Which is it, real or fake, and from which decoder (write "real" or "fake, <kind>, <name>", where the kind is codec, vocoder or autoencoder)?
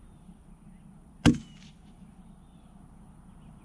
real